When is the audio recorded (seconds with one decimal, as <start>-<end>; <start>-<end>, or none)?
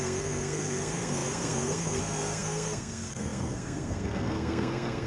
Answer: none